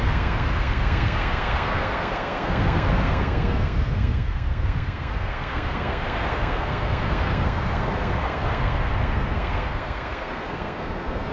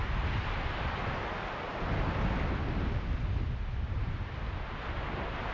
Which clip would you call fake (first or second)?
first